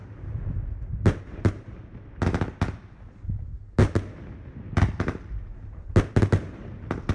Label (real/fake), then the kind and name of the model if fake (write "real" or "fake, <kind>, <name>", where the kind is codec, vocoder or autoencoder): real